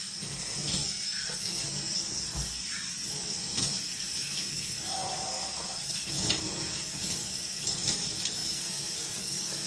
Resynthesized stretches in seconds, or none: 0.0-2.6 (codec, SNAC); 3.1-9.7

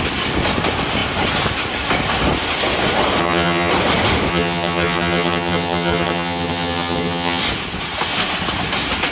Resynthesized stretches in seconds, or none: 3.2-3.7 (vocoder, HiFi-GAN); 4.3-7.4